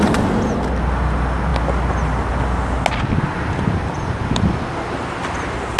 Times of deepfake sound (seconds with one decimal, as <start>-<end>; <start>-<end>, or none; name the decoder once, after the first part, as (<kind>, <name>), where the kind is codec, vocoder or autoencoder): none